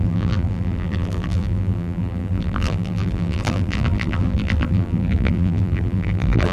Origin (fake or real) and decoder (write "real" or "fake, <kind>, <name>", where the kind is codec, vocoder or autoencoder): fake, vocoder, BigVGAN v2